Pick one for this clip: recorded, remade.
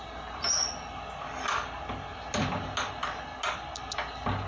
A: recorded